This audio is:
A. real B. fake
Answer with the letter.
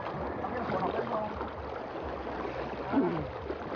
A